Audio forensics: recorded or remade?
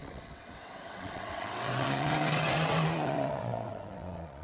remade